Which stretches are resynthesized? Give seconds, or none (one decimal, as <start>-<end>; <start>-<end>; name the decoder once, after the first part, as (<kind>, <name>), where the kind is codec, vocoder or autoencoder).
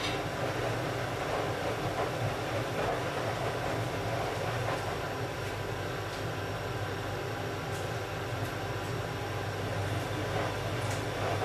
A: none